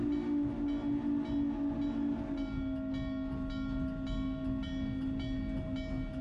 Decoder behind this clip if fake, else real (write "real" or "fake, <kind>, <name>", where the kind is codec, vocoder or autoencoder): real